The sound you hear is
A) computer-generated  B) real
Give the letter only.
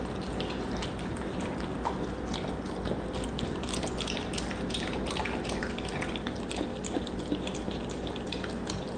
B